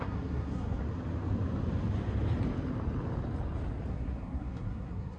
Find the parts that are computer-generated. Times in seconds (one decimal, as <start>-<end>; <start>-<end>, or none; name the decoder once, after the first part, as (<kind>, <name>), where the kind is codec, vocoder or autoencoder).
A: 0.0-0.8 (codec, SNAC); 3.9-5.2